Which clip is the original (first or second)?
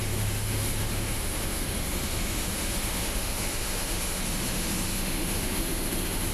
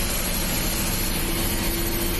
second